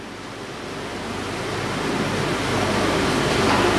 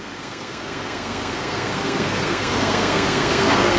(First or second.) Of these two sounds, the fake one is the second